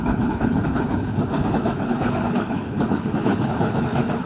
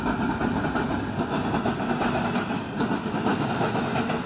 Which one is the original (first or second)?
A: second